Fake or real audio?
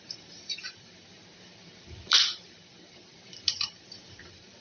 fake